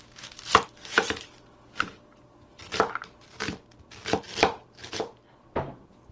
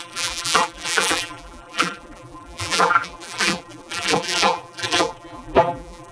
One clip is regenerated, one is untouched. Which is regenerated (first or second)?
second